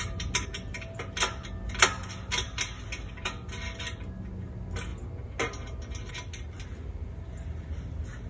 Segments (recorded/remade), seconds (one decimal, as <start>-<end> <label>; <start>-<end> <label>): 0.0-8.3 recorded